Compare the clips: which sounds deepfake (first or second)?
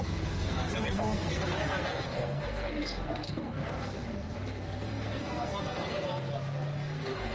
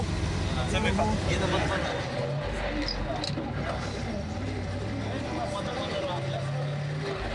first